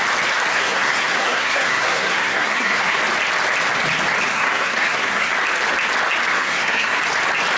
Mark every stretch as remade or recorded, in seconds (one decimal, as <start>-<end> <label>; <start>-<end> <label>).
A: 0.0-0.5 recorded; 0.5-3.0 remade; 3.0-4.3 recorded; 4.3-5.3 remade; 5.3-6.3 recorded; 6.3-7.0 remade; 7.0-7.6 recorded